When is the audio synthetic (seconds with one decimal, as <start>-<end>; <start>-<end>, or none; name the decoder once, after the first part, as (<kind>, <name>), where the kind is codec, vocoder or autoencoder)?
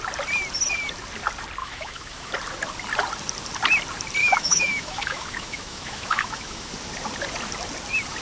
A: 1.6-2.3 (autoencoder, DAC-VAE); 4.2-6.7